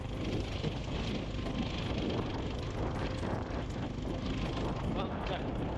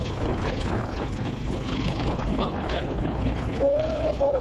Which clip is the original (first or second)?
first